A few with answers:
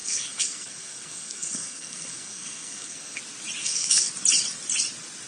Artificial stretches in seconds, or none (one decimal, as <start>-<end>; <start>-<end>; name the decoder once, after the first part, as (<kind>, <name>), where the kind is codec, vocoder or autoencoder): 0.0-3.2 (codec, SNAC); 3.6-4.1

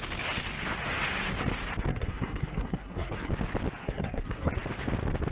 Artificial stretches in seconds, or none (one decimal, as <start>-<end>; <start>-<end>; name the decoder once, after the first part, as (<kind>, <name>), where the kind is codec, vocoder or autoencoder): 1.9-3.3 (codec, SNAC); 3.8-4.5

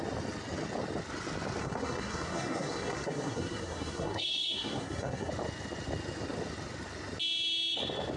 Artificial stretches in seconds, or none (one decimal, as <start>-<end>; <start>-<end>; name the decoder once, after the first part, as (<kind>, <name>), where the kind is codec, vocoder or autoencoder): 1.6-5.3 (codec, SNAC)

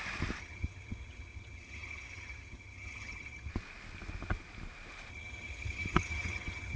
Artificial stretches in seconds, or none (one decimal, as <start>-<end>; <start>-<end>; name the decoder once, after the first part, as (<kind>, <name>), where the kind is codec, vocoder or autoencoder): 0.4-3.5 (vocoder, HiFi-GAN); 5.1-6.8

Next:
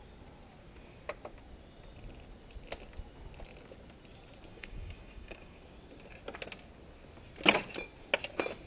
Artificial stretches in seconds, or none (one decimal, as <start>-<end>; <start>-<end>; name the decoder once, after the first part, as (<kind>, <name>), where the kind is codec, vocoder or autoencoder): 4.5-5.6 (codec, DAC)

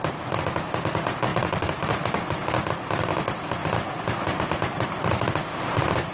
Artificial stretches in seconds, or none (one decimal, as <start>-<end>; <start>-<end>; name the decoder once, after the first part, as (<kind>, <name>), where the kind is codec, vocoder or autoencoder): 1.3-1.8 (vocoder, BigVGAN v2); 3.6-6.1

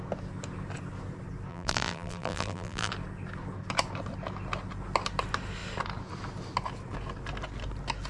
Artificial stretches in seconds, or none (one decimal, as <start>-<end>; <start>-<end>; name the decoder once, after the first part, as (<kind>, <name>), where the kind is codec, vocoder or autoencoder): 1.5-2.9 (vocoder, BigVGAN v2)